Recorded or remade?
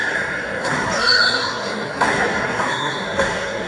remade